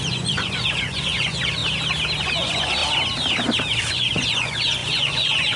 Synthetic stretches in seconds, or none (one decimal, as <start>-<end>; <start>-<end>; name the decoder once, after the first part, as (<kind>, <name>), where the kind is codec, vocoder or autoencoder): 0.0-1.6 (vocoder, Vocos); 2.2-2.8; 3.9-5.6